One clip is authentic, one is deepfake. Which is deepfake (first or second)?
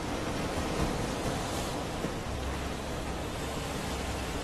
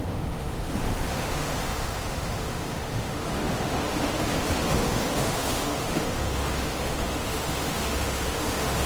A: second